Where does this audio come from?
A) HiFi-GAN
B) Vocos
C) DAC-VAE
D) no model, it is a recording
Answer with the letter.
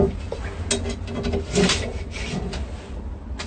D